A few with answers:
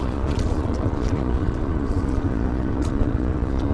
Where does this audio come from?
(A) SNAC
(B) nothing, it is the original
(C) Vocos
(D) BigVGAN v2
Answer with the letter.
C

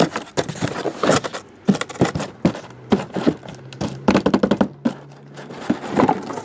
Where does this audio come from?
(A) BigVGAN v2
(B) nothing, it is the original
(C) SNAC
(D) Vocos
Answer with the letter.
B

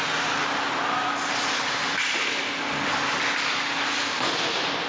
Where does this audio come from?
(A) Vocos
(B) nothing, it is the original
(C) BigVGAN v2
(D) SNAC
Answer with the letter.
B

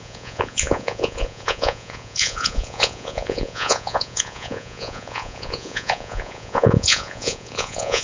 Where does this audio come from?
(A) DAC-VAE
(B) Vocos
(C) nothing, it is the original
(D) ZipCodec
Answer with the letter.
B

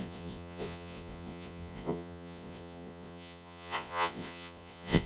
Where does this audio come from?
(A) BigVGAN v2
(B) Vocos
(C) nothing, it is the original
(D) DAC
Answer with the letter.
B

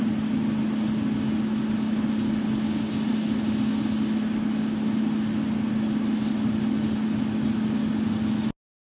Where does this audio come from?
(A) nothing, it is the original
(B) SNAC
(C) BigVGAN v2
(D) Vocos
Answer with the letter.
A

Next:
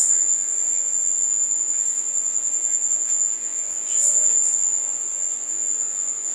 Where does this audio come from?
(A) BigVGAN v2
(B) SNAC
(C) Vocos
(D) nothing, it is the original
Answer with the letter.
C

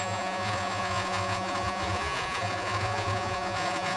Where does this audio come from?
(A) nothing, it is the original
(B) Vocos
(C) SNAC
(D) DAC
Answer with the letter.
B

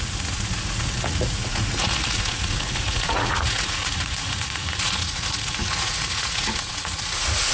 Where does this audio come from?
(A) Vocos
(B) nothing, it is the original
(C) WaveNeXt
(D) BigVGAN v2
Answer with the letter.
A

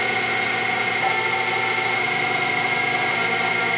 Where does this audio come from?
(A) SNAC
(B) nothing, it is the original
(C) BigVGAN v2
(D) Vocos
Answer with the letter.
B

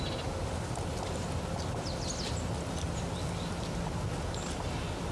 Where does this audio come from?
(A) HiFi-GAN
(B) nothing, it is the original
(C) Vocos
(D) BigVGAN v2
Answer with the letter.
B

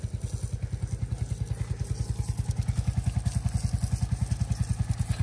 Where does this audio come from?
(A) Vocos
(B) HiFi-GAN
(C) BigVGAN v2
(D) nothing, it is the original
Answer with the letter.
D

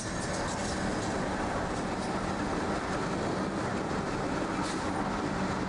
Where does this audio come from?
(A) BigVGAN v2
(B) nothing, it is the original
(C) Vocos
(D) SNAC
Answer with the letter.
B